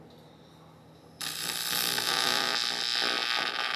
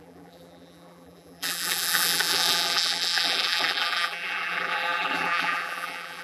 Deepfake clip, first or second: second